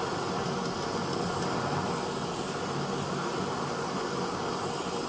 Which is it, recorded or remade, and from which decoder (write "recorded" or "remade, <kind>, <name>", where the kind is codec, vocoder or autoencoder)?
recorded